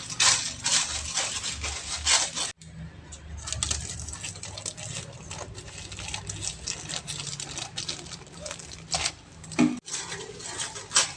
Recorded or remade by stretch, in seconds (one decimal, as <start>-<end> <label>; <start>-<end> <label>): 0.0-11.2 recorded